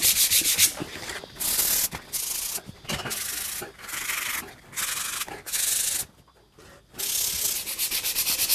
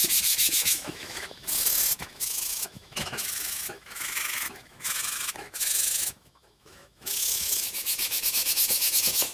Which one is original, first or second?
first